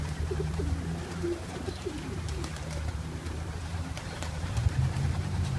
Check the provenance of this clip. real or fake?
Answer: fake